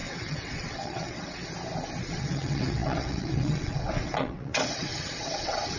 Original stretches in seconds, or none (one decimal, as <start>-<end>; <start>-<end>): 1.4-2.0